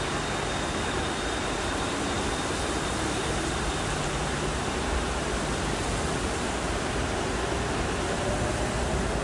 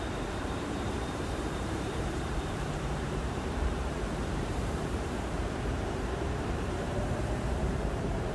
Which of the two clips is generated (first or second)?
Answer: second